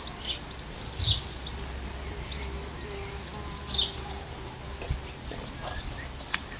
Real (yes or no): yes